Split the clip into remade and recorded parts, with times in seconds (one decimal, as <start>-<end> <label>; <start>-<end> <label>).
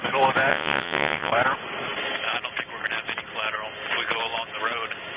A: 0.0-0.5 recorded; 0.5-1.3 remade; 1.3-5.2 recorded